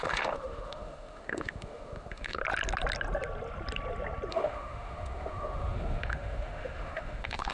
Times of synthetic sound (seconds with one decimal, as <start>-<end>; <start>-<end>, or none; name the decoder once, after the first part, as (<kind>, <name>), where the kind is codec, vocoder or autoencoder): 0.0-2.4 (autoencoder, DAC-VAE); 4.3-7.5